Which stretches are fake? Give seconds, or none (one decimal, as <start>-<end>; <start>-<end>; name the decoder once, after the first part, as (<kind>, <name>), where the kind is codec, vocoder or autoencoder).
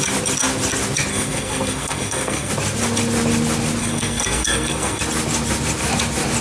1.1-2.5 (codec, SNAC); 3.8-5.0